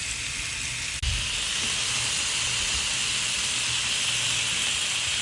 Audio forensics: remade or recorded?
recorded